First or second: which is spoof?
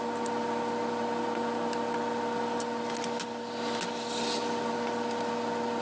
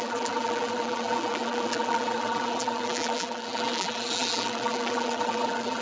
second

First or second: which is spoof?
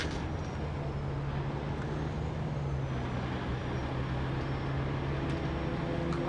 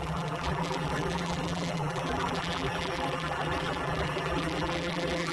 second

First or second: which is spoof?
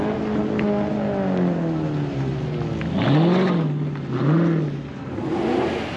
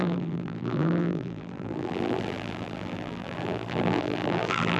second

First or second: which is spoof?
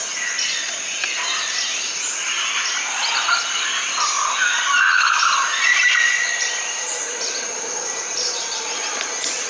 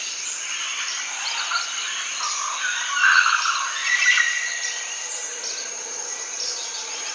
second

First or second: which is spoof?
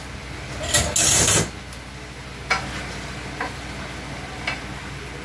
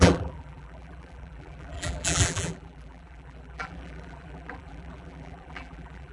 second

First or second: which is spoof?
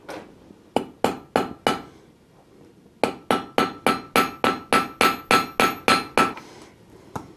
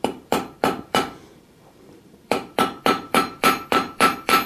second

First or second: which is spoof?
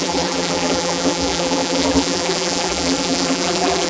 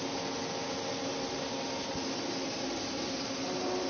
first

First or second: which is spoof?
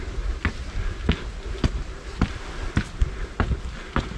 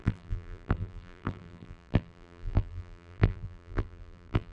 second